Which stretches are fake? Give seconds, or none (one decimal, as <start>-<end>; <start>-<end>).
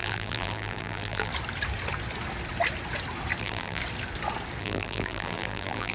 0.0-1.3; 3.4-3.8; 4.6-5.9